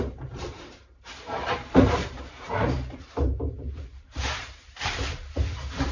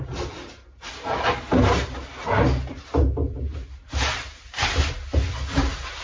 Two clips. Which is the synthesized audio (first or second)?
first